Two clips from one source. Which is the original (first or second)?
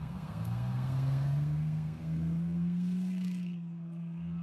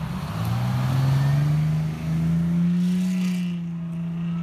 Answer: second